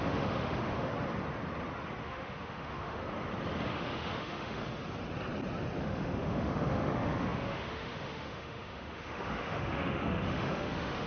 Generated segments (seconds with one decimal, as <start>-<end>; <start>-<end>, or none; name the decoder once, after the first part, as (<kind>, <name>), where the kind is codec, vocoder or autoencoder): 0.0-0.9 (autoencoder, DAC-VAE); 2.0-3.0; 3.7-4.6; 5.8-11.1